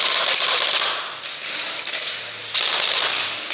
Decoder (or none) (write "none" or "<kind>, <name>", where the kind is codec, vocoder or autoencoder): none